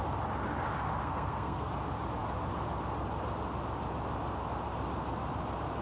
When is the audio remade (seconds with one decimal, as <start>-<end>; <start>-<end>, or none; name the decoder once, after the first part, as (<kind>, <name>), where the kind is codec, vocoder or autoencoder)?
1.0-1.7 (codec, SNAC)